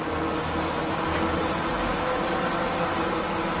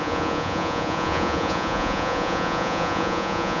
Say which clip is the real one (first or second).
first